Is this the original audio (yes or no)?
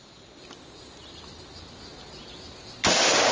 yes